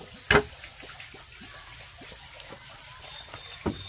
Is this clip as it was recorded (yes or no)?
yes